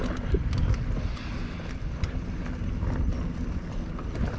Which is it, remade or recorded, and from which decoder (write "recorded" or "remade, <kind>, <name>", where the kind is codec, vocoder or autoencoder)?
recorded